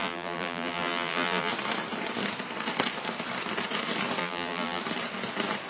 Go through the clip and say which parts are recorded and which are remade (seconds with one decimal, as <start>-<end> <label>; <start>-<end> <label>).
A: 0.0-1.5 remade; 1.5-4.2 recorded; 4.2-4.8 remade; 4.8-5.7 recorded